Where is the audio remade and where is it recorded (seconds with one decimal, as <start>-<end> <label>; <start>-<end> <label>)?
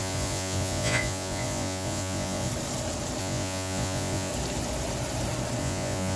0.0-2.5 remade; 2.5-3.2 recorded; 3.2-4.3 remade; 4.3-5.6 recorded; 5.6-6.2 remade